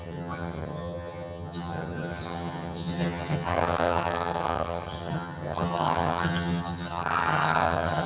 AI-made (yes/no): yes